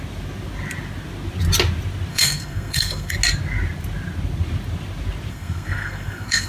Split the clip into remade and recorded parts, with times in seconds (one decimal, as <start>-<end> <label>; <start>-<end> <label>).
0.0-2.1 recorded; 2.1-3.1 remade; 3.1-5.3 recorded; 5.3-6.5 remade